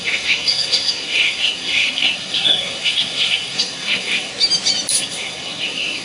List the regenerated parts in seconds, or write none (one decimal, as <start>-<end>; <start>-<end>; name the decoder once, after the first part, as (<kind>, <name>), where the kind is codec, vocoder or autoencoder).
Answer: 0.0-4.3 (codec, SNAC); 4.9-6.0